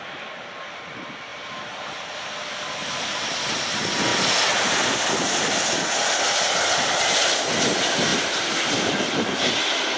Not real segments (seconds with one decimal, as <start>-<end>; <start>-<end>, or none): 1.3-2.1; 8.1-8.9